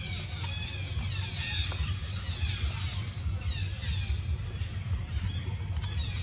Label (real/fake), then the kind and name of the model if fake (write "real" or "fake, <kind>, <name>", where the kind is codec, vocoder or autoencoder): real